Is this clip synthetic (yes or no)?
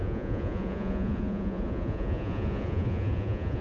yes